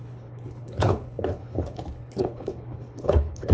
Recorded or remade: remade